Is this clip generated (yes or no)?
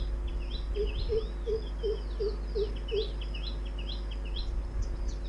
no